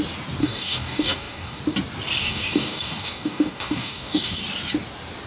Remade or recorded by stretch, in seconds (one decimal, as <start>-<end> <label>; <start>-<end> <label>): 0.0-0.4 recorded; 0.4-1.6 remade; 1.6-2.2 recorded; 2.2-4.4 remade; 4.4-5.3 recorded